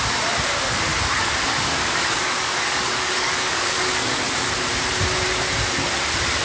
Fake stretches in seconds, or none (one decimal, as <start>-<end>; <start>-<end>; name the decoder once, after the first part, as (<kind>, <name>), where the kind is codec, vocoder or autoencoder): 0.9-4.7 (codec, DAC)

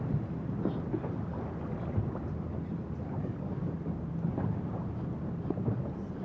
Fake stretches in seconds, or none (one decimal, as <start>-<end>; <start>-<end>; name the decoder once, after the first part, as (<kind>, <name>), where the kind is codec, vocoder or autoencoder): 3.2-3.7 (codec, DAC)

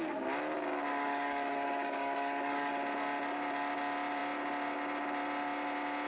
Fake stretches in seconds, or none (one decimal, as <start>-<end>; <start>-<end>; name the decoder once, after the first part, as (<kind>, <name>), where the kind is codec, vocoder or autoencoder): 0.9-2.7 (codec, DAC)

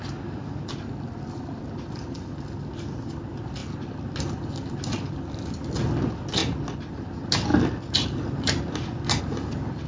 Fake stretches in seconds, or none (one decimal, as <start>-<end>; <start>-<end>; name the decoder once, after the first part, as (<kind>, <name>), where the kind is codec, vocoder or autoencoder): none

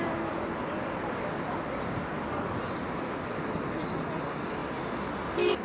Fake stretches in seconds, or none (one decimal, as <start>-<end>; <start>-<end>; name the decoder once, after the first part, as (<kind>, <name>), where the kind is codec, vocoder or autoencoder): none